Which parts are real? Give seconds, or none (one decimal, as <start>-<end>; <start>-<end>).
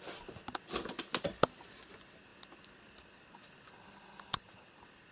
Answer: 0.0-5.1